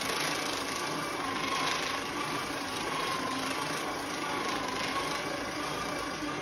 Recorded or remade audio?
recorded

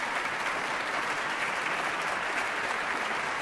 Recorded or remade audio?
remade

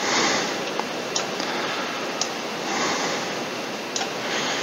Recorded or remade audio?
recorded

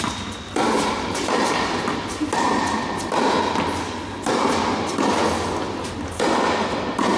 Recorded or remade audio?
recorded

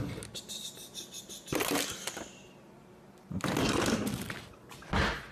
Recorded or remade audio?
recorded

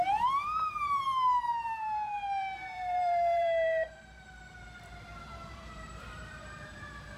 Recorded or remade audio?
remade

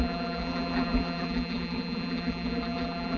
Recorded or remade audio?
remade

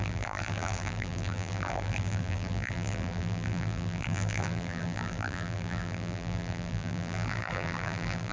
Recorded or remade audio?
remade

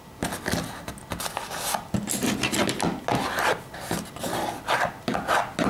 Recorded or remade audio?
recorded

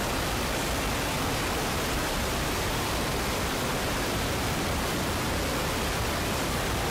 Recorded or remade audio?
remade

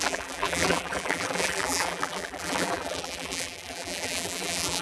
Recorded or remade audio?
remade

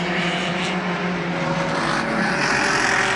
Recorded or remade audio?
remade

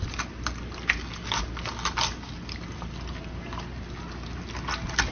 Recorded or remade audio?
recorded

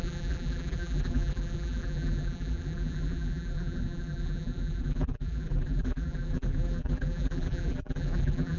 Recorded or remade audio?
remade